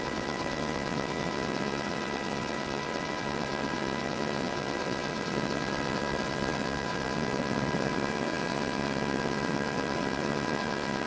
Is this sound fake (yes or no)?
yes